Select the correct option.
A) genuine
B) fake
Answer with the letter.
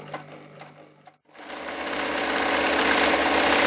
A